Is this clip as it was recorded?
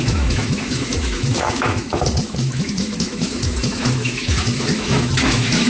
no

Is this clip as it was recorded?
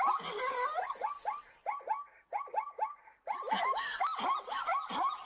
yes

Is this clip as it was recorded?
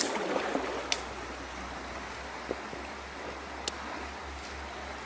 yes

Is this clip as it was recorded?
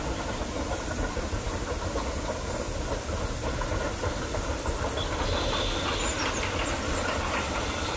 yes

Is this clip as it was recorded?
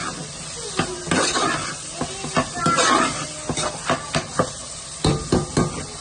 yes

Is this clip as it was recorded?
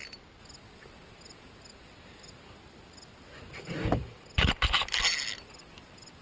yes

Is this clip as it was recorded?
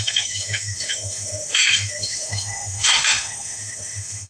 no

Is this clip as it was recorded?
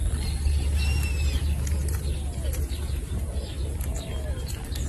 yes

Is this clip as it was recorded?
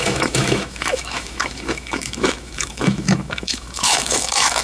no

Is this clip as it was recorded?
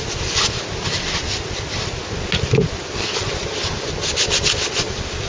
yes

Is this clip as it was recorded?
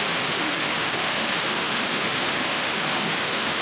no